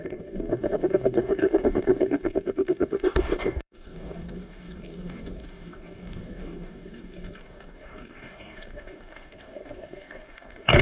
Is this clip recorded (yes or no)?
no